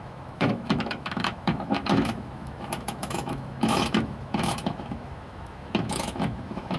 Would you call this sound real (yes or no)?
no